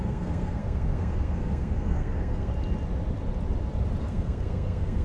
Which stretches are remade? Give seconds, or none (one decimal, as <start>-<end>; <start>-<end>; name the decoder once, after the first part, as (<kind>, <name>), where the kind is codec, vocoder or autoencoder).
0.0-2.5 (codec, SNAC); 4.0-5.0